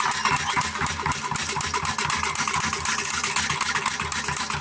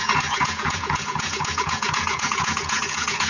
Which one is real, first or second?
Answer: first